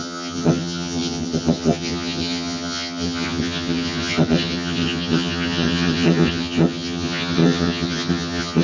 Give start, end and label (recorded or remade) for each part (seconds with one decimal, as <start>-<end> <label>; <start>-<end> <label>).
0.0-8.6 remade